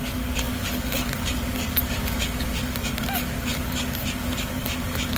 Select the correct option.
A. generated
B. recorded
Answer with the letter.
A